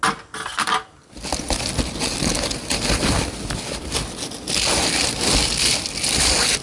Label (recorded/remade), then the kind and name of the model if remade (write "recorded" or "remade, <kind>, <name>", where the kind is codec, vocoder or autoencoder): recorded